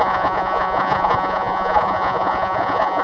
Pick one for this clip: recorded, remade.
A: remade